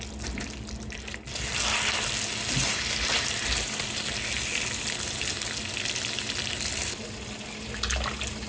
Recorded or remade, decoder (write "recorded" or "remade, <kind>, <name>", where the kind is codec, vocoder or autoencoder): recorded